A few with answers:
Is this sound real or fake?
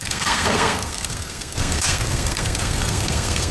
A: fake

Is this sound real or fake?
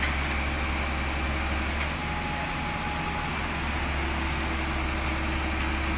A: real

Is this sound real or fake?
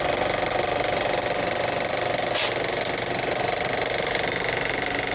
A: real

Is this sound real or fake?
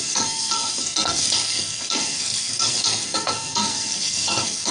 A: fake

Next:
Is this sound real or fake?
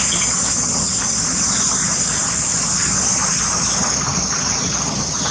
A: real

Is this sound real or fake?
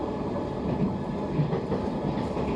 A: real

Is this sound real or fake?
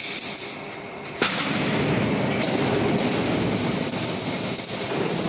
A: real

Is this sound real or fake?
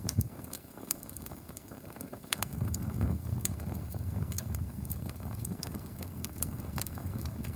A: fake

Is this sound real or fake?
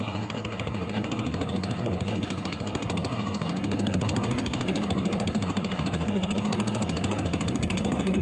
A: fake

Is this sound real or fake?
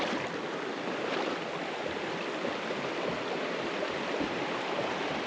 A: real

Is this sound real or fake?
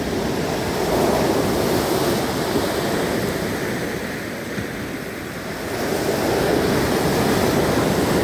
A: real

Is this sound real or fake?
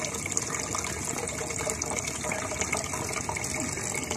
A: real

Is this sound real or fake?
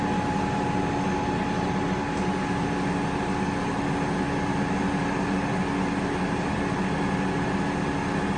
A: real